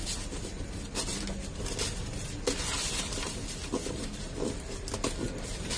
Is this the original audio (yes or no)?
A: yes